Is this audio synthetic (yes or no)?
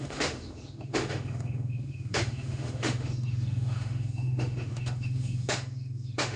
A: yes